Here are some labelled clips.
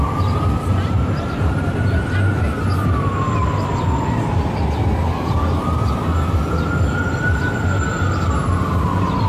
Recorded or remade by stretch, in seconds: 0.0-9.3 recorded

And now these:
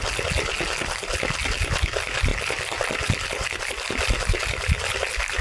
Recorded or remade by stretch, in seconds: 0.0-5.4 recorded

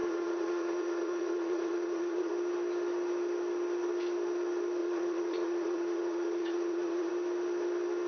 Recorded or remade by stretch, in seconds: 0.0-2.3 remade; 2.3-4.8 recorded; 4.8-7.1 remade; 7.1-8.1 recorded

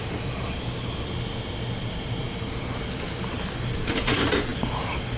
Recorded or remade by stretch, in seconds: 0.0-5.2 remade

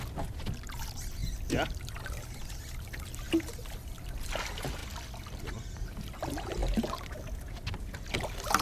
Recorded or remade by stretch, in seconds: 0.0-8.6 recorded

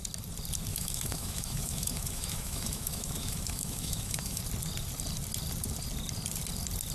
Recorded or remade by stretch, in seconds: 0.0-0.7 recorded; 0.7-4.4 remade; 4.4-6.9 recorded

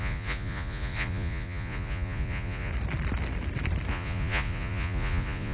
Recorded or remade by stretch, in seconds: 0.0-2.7 remade; 2.7-3.9 recorded; 3.9-5.5 remade

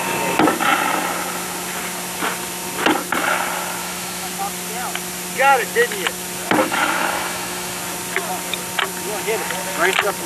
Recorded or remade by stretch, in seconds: 0.0-3.8 recorded; 3.8-4.3 remade; 4.3-6.6 recorded; 6.6-7.8 remade; 7.8-10.3 recorded